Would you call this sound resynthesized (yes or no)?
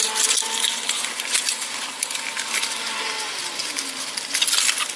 no